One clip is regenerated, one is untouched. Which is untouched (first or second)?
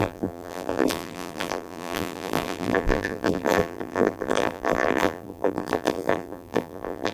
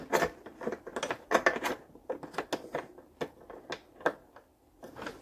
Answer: second